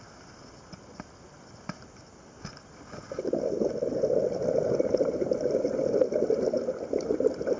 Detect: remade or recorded recorded